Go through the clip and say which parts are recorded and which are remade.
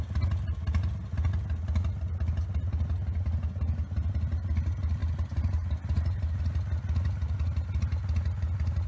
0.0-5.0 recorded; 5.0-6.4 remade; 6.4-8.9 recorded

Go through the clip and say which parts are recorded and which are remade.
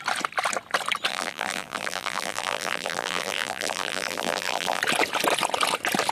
0.0-1.1 recorded; 1.1-4.8 remade; 4.8-6.1 recorded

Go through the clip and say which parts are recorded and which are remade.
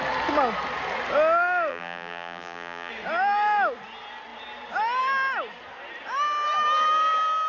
0.0-1.7 recorded; 1.7-2.9 remade; 2.9-7.5 recorded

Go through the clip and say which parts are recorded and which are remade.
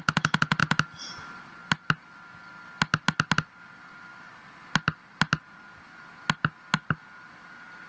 0.0-7.9 recorded